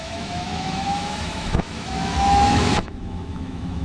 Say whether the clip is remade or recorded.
remade